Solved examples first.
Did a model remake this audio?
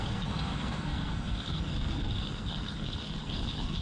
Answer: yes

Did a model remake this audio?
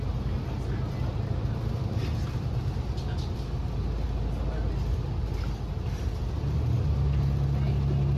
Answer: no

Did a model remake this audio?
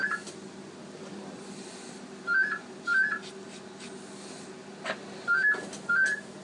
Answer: no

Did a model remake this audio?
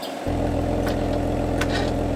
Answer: no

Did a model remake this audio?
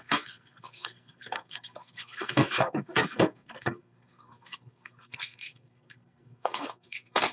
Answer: yes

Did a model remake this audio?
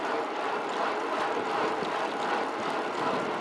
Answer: no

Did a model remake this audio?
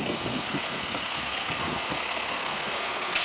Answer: yes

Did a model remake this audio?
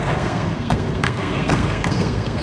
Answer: yes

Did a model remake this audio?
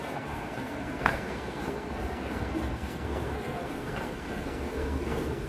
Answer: yes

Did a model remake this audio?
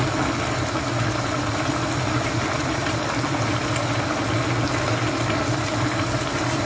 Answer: no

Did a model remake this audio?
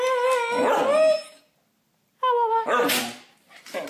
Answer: no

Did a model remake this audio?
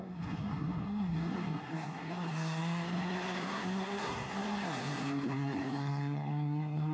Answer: yes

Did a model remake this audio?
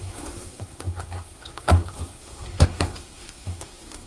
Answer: yes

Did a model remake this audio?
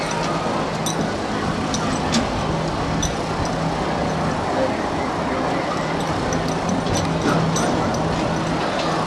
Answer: no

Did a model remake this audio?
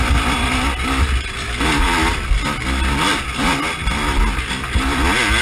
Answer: no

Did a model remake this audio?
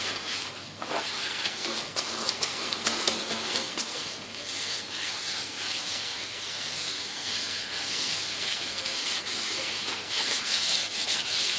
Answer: yes